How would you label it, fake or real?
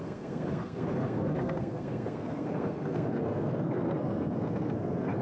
fake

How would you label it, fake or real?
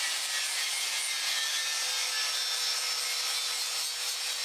real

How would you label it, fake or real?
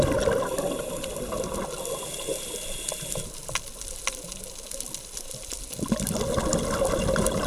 real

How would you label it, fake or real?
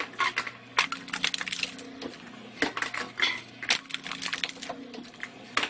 real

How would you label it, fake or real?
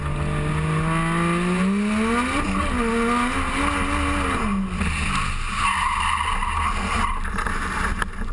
real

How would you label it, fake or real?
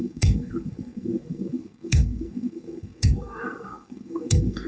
fake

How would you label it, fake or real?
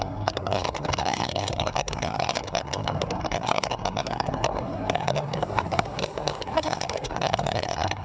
fake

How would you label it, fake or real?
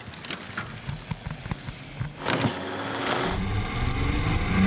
real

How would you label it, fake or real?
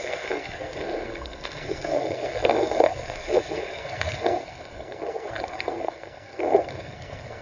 fake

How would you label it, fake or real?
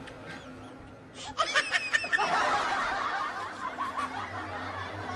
real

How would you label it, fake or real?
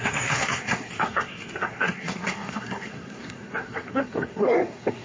fake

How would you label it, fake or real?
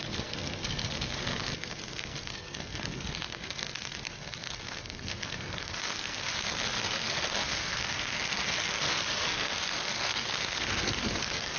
fake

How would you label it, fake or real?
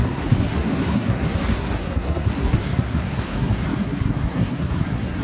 fake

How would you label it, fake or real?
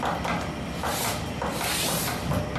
real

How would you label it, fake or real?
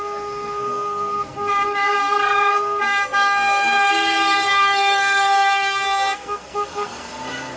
fake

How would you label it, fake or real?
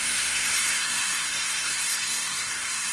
fake